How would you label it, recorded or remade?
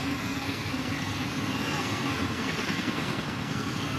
remade